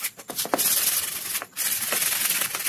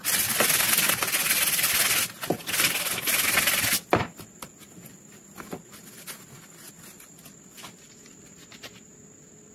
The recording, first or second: second